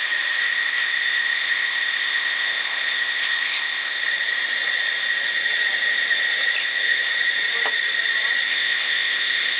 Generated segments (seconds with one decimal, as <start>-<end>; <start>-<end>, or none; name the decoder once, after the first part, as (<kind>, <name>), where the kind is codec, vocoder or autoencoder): 0.4-4.0 (codec, ZipCodec); 6.6-7.1; 8.5-9.6